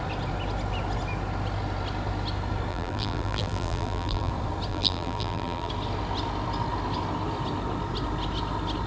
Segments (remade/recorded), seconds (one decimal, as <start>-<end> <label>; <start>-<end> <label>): 0.0-2.7 recorded; 2.7-4.3 remade; 4.3-4.7 recorded; 4.7-5.7 remade; 5.7-8.9 recorded